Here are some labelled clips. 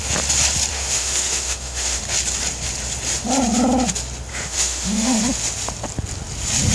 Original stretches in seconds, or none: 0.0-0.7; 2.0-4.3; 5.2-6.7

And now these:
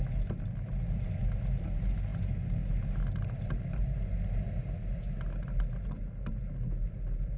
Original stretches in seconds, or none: 0.0-7.4

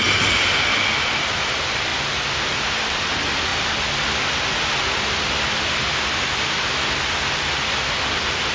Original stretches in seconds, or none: 0.0-8.5

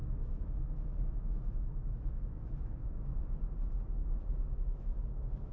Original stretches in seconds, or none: 3.2-4.0; 5.0-5.5

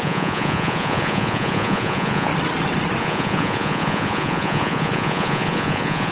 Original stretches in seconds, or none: 2.3-3.0

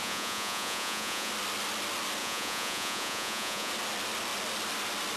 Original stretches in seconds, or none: 1.3-2.2; 3.7-5.2

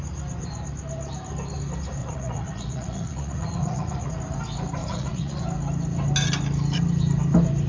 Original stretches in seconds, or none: 0.0-2.0; 4.1-4.8; 5.4-7.7

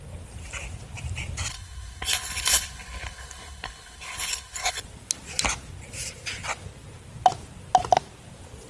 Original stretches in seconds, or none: 0.0-1.5; 4.8-8.7